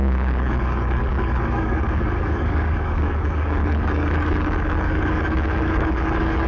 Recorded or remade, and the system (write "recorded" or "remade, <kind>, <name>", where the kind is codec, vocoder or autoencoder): remade, codec, DAC